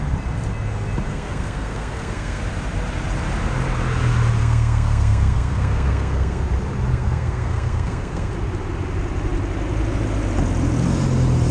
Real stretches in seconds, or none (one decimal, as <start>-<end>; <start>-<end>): 0.0-1.1; 2.4-4.4; 6.4-6.9; 8.3-11.5

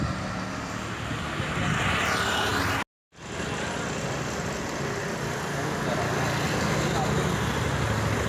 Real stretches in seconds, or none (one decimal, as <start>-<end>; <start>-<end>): 0.0-8.3

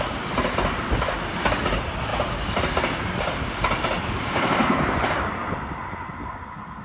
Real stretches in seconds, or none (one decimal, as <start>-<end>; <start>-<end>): 0.0-6.8

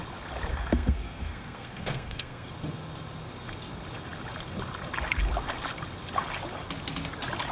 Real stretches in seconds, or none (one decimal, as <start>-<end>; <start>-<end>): 0.0-0.5; 2.5-7.5

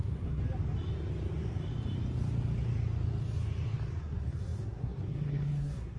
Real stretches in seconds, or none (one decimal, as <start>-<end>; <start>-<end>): 0.4-4.0

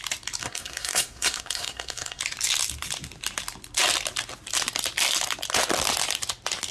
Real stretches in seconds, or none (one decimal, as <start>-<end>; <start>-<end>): 0.0-0.4; 2.2-6.7

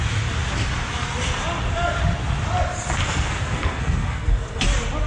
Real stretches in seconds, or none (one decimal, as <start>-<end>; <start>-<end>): 0.0-3.0; 4.6-5.1